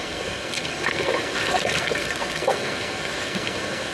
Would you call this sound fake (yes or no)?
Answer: yes